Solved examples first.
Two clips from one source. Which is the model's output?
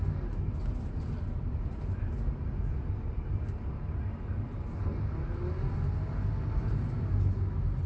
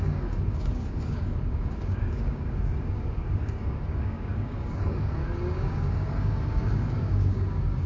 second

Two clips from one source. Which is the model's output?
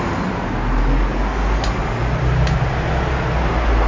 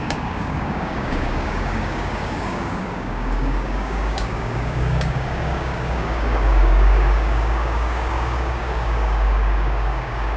second